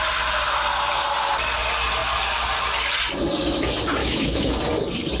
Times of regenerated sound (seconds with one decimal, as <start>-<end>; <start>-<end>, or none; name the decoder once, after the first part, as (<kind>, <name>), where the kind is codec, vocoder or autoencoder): 4.0-4.6 (autoencoder, DAC-VAE)